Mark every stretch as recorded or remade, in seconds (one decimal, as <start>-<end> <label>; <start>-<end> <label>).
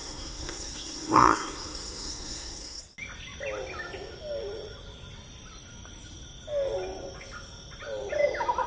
0.0-2.8 remade; 2.8-8.7 recorded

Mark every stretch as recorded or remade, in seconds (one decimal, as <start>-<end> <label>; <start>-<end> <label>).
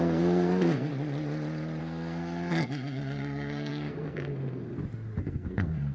0.0-0.9 remade; 0.9-1.8 recorded; 1.8-4.7 remade; 4.7-5.2 recorded; 5.2-5.9 remade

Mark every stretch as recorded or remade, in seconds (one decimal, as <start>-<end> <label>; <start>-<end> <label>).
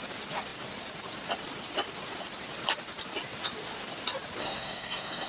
0.0-4.4 recorded; 4.4-5.3 remade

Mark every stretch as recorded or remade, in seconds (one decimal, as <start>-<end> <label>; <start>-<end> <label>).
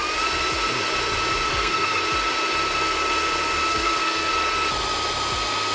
0.0-1.5 recorded; 1.5-2.0 remade; 2.0-3.7 recorded; 3.7-4.3 remade; 4.3-5.7 recorded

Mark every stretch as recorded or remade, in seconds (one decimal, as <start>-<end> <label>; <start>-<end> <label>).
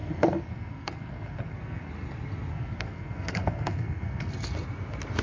0.0-1.9 remade; 1.9-2.5 recorded; 2.5-4.3 remade; 4.3-5.2 recorded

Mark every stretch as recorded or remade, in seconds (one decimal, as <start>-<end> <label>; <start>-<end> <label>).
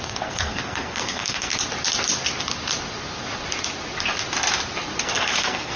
0.0-1.5 remade; 1.5-5.0 recorded; 5.0-5.8 remade